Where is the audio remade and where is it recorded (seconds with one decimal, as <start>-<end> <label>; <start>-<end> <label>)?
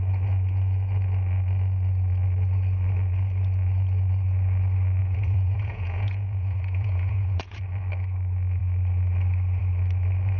0.0-5.0 recorded; 5.0-7.6 remade; 7.6-10.4 recorded